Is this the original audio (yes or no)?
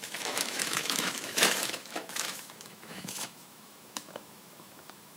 no